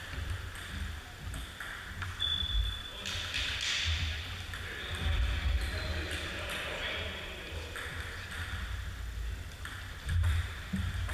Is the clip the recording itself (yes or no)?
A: yes